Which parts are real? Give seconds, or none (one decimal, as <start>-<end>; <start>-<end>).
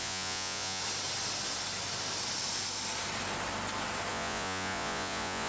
0.8-4.1